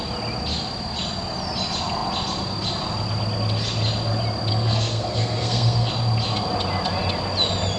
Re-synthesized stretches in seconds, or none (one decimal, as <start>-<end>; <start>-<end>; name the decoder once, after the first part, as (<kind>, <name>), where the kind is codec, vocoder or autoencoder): 4.5-5.9 (codec, SNAC)